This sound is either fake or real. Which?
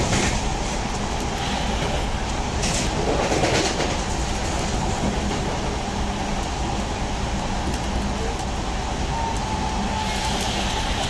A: real